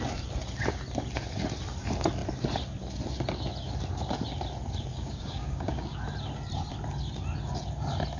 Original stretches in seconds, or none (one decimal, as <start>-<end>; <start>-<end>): 0.0-4.9; 6.0-8.2